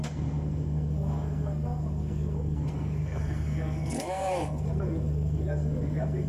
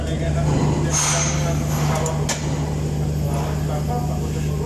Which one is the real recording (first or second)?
second